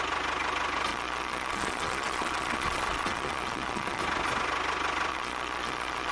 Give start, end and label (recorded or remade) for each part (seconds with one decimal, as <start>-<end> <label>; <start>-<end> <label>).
0.0-0.9 recorded; 0.9-4.0 remade; 4.0-5.1 recorded; 5.1-6.1 remade